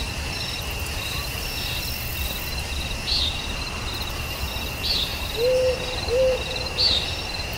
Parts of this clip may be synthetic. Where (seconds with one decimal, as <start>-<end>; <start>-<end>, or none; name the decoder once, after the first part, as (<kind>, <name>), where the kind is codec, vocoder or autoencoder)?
5.1-7.6 (vocoder, BigVGAN v2)